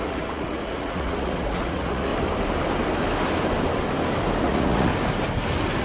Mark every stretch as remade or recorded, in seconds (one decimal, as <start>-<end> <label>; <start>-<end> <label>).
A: 0.0-2.1 remade; 2.1-4.4 recorded; 4.4-4.9 remade; 4.9-5.8 recorded